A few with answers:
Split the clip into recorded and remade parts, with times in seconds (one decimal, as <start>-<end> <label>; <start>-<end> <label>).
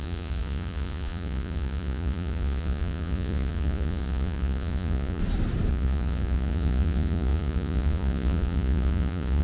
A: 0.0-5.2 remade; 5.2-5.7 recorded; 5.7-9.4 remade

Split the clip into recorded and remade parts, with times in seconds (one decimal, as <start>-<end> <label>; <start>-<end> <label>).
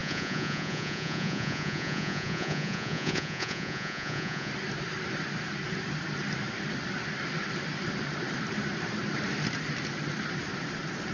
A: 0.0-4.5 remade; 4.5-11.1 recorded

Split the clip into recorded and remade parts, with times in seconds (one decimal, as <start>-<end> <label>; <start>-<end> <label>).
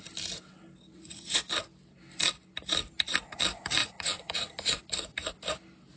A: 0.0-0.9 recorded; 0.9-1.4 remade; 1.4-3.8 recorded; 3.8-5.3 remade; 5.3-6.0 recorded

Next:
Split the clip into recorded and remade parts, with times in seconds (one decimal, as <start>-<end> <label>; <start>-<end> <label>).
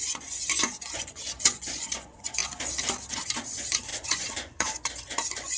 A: 0.0-2.4 remade; 2.4-3.1 recorded; 3.1-5.6 remade